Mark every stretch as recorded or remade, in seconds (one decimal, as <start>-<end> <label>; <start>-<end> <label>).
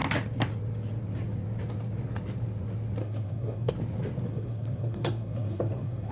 0.0-3.0 recorded; 3.0-3.7 remade; 3.7-4.3 recorded; 4.3-6.1 remade